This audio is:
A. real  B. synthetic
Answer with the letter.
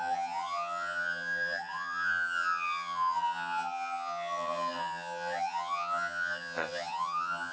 B